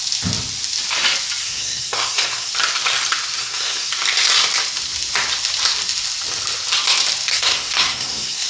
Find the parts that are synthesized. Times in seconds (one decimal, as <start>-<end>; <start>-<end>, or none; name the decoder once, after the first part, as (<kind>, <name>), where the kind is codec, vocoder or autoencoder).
1.4-2.5 (codec, SNAC); 3.4-3.9; 7.3-8.5